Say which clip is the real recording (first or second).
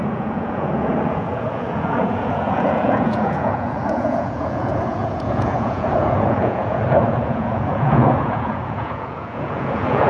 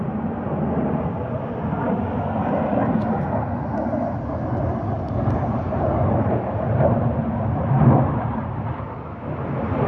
second